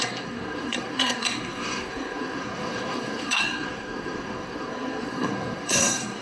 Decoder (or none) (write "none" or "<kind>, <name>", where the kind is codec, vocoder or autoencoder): codec, SNAC